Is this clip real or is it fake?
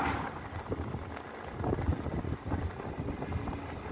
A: real